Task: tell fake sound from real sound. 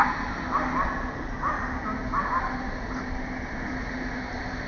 real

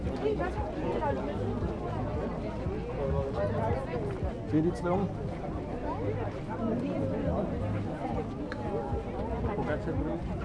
real